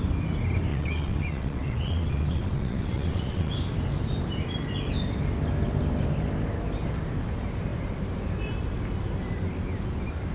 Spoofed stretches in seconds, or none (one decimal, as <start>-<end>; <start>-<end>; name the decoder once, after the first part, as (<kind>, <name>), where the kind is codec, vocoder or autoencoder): 0.7-3.5 (vocoder, WaveNeXt)